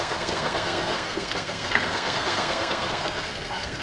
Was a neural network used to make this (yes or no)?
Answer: yes